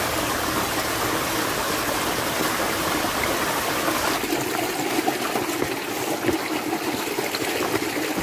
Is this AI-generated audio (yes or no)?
no